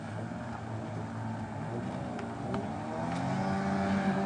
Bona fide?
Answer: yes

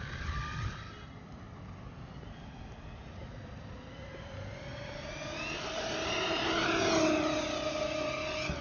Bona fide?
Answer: yes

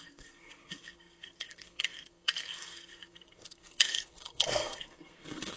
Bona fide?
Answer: no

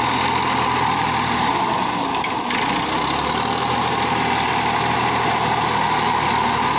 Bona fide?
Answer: yes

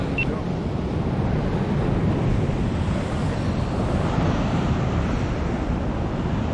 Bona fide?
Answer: yes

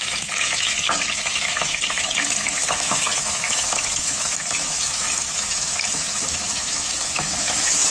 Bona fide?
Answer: no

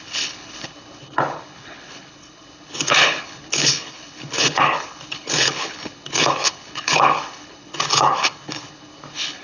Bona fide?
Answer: no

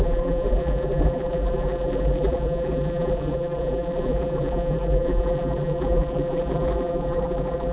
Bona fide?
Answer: no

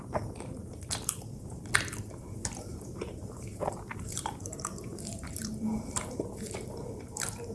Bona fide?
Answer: no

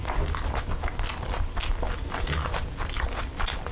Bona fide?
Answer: no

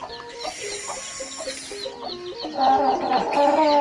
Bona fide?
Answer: yes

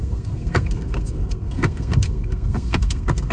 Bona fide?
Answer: no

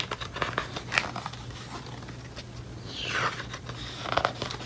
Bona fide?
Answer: yes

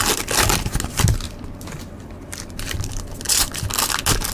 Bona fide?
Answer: yes